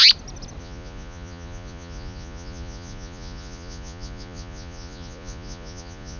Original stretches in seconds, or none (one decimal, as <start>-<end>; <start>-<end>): 0.0-0.6